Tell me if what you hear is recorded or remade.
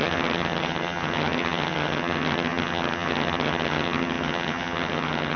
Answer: remade